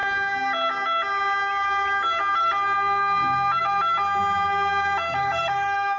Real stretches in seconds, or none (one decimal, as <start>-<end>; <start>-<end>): 0.0-5.2